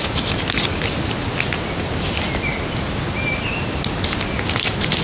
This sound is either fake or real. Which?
real